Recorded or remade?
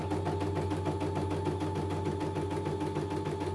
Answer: recorded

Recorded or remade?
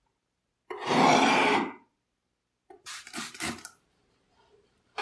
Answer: remade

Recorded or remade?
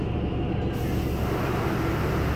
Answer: recorded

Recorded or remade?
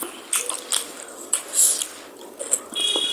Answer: recorded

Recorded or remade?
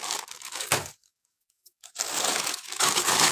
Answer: remade